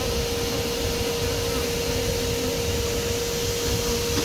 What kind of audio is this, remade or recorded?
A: recorded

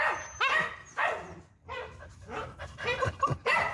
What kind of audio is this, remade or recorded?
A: recorded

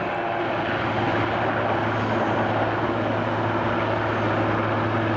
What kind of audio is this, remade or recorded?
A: recorded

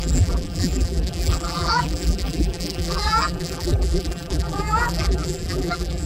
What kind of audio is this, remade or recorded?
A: remade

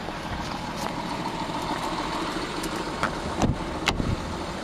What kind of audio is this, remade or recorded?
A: remade